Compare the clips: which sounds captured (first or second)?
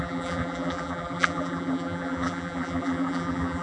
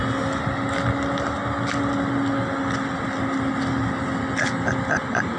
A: second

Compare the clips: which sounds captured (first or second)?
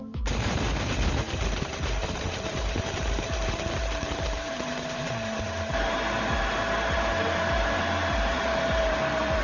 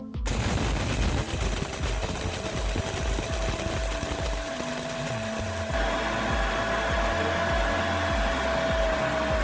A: second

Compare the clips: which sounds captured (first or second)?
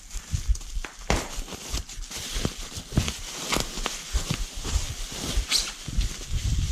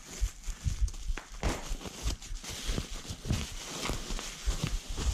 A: second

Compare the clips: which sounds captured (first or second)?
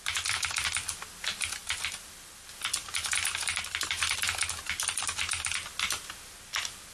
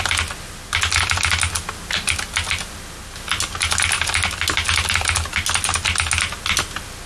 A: second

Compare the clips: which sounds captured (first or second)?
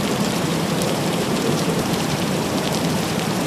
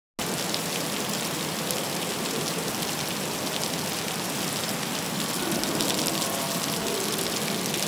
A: second